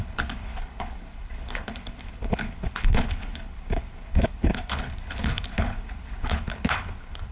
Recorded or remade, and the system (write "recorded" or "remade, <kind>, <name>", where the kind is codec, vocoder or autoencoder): remade, codec, HILCodec